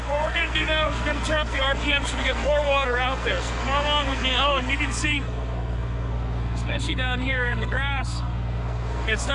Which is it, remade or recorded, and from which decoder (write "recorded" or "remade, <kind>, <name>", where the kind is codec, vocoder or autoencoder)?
remade, codec, SNAC